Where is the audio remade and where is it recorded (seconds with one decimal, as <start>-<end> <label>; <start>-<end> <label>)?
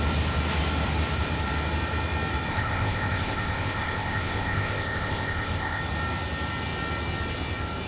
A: 0.0-2.5 recorded; 2.5-5.8 remade; 5.8-7.9 recorded